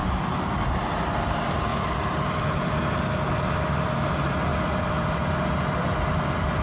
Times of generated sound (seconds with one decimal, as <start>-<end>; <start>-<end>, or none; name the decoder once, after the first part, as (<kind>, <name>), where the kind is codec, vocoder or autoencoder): 1.7-2.7 (vocoder, BigVGAN v2); 4.5-5.3